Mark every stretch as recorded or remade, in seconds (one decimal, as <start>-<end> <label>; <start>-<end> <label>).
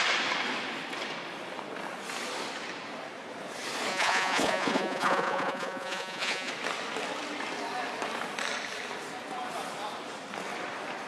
0.0-3.9 recorded; 3.9-6.5 remade; 6.5-11.1 recorded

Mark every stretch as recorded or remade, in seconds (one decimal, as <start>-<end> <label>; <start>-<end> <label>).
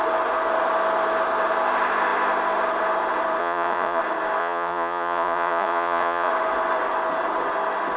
0.0-3.4 recorded; 3.4-4.0 remade; 4.0-4.4 recorded; 4.4-6.3 remade; 6.3-8.0 recorded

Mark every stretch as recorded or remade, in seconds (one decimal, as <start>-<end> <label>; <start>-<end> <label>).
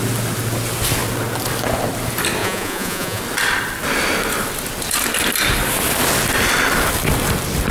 0.0-2.4 recorded; 2.4-3.2 remade; 3.2-7.7 recorded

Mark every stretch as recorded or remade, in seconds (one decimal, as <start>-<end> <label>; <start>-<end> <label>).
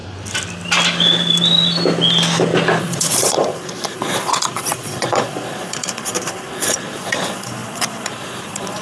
0.0-2.8 recorded; 2.8-8.8 remade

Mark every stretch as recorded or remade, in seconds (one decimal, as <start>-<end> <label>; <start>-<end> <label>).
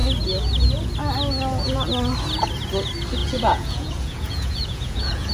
0.0-3.2 recorded; 3.2-5.3 remade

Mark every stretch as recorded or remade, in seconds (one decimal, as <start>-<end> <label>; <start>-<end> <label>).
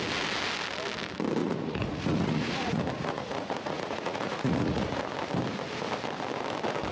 0.0-1.4 recorded; 1.4-5.0 remade; 5.0-6.9 recorded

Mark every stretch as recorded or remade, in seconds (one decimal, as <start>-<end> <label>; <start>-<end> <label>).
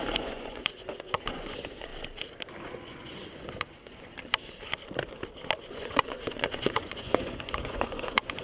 0.0-1.9 remade; 1.9-2.6 recorded; 2.6-4.1 remade; 4.1-5.7 recorded; 5.7-8.4 remade